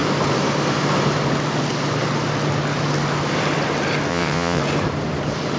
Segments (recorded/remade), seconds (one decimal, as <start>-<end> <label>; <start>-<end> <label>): 0.0-4.1 recorded; 4.1-4.6 remade; 4.6-5.6 recorded